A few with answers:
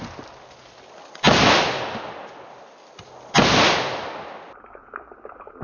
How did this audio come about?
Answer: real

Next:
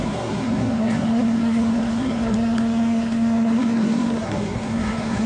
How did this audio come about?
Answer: fake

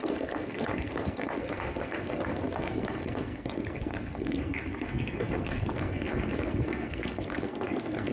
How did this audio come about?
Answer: fake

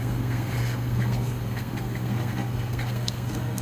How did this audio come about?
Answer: fake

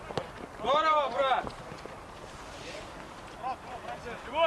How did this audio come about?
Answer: real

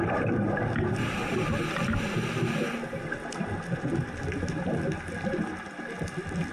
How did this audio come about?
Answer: real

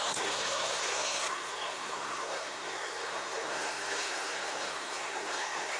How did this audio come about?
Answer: fake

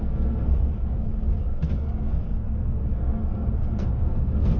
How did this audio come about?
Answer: fake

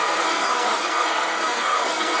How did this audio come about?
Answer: fake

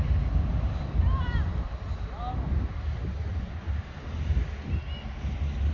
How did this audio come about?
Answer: real